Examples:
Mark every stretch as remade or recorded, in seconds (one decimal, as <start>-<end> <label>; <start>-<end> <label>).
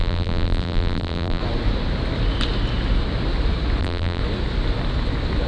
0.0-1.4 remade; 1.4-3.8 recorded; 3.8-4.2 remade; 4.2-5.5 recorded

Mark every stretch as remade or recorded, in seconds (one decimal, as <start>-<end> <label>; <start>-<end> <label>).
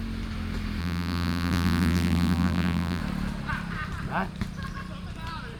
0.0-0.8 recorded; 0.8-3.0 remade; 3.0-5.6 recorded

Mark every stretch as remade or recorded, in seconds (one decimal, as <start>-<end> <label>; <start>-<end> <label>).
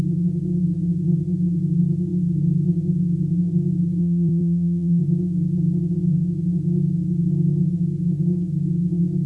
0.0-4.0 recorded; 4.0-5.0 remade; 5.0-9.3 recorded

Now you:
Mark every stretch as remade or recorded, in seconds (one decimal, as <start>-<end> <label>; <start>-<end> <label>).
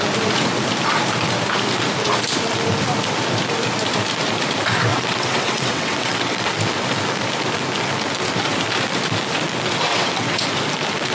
0.0-4.9 recorded; 4.9-6.5 remade; 6.5-9.9 recorded; 9.9-10.4 remade; 10.4-11.1 recorded